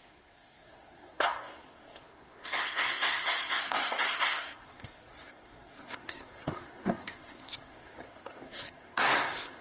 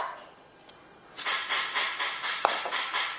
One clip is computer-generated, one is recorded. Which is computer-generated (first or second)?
first